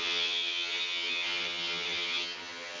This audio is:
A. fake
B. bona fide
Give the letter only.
A